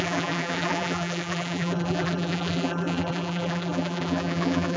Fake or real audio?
fake